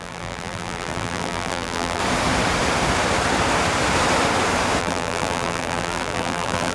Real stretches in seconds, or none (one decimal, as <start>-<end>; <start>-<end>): 2.0-4.8